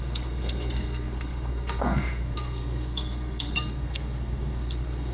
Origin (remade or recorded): remade